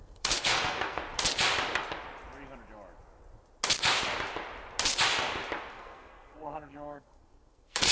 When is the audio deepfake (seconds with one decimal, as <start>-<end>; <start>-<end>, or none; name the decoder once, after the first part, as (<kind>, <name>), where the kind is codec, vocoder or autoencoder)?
0.0-1.0 (codec, SNAC); 5.7-7.9